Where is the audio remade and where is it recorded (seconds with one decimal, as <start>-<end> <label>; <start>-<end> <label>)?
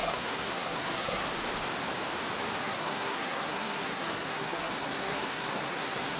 0.0-1.3 remade; 1.3-2.6 recorded; 2.6-6.2 remade